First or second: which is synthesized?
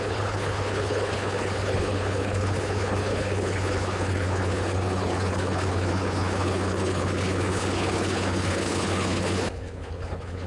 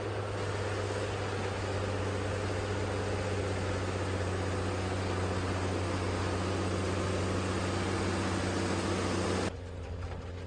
first